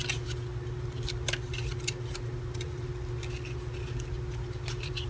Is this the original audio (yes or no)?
yes